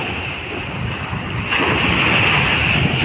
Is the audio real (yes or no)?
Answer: yes